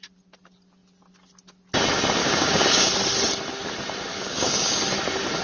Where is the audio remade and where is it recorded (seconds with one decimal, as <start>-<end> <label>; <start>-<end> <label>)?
0.0-2.2 recorded; 2.2-2.9 remade; 2.9-4.1 recorded; 4.1-4.8 remade; 4.8-5.4 recorded